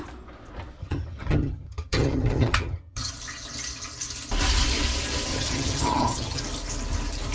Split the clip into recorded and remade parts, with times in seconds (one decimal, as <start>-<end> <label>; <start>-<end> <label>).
0.0-0.8 recorded; 0.8-3.1 remade; 3.1-5.3 recorded; 5.3-6.4 remade; 6.4-7.3 recorded